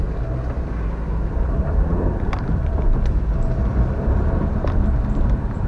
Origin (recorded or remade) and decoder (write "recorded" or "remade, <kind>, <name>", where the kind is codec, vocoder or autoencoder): remade, vocoder, BigVGAN v2